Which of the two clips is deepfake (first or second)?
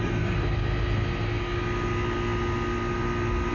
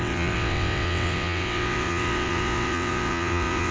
second